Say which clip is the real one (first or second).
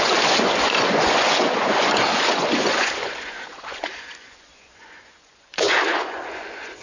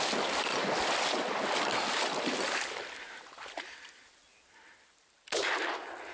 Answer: second